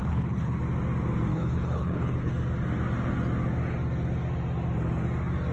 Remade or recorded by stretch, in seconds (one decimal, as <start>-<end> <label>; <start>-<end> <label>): 0.0-0.6 remade; 0.6-1.3 recorded; 1.3-2.3 remade; 2.3-5.5 recorded